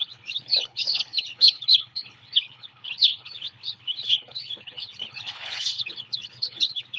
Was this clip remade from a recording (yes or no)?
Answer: yes